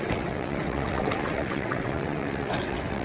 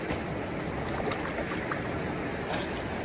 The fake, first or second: first